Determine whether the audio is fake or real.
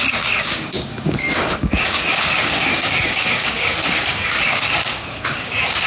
fake